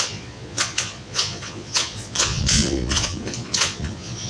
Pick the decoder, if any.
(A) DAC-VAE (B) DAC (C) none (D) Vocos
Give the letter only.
D